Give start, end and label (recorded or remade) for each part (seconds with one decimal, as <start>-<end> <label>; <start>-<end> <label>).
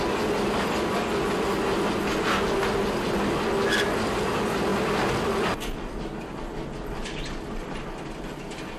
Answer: 0.0-8.8 recorded